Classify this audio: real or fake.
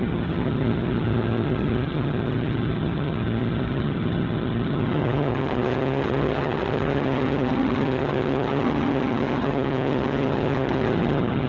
fake